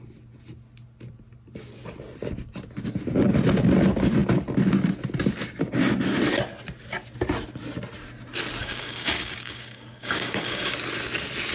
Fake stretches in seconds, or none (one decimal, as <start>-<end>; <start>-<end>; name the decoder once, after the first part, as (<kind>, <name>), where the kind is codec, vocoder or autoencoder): 8.6-10.7 (codec, DAC)